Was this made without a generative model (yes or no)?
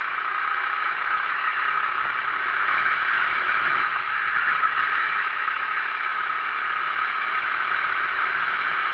no